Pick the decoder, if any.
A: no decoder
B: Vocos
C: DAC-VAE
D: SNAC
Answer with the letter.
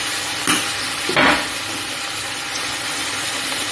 A